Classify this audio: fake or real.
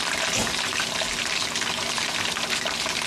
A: real